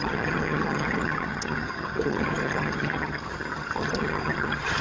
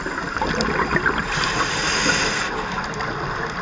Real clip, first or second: second